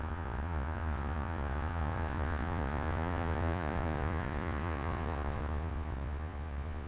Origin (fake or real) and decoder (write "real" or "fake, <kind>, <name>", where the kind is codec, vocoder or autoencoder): fake, vocoder, Vocos